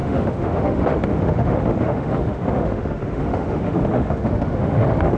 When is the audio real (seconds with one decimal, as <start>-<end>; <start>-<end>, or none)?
none